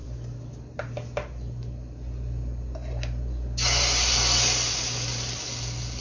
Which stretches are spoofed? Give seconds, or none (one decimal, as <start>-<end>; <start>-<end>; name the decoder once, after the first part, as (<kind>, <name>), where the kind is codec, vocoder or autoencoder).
none